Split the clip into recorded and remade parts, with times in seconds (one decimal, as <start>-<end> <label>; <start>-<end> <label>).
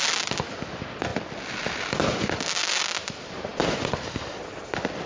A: 0.0-5.1 recorded